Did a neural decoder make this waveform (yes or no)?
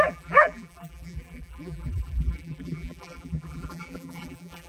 yes